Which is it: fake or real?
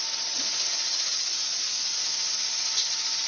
real